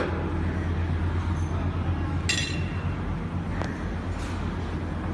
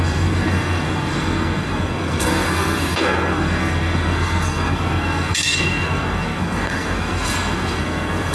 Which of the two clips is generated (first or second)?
second